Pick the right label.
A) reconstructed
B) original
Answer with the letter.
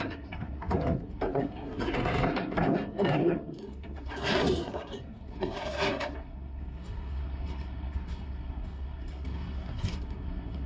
A